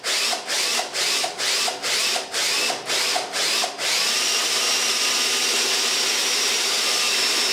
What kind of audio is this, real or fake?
real